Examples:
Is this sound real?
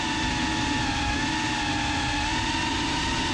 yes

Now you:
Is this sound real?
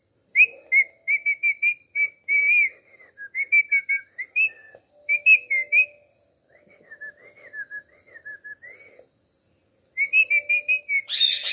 yes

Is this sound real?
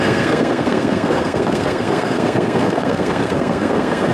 no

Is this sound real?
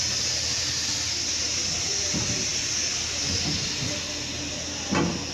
yes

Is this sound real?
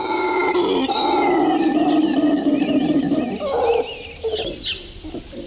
yes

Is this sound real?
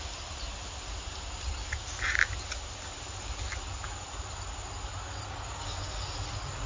yes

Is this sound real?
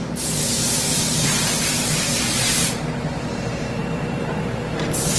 no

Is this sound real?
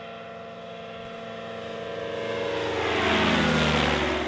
yes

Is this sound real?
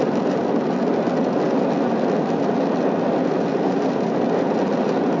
yes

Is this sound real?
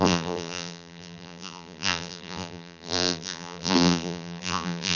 no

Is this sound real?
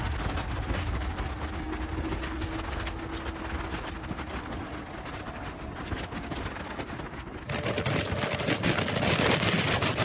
yes